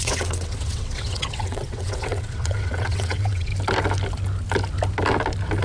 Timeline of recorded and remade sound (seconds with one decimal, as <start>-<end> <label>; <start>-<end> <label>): 0.0-3.5 remade; 3.5-5.6 recorded